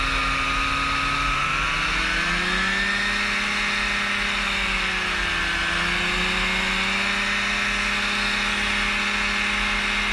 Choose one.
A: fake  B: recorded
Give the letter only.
B